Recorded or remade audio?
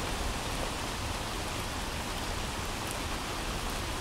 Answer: recorded